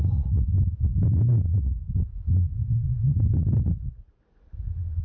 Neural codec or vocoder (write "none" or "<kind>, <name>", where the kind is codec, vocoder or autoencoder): none